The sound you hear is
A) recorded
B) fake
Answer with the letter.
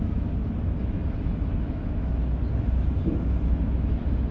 B